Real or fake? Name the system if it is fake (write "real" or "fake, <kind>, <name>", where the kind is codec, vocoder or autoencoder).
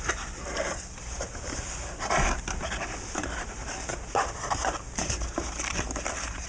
fake, vocoder, BigVGAN v2